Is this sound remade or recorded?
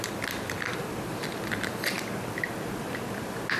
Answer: recorded